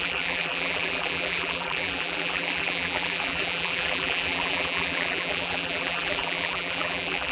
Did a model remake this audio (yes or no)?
yes